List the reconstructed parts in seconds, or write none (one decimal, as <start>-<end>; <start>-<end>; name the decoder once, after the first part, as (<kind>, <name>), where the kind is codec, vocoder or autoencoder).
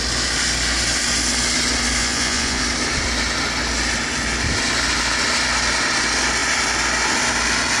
2.0-2.6 (vocoder, Vocos)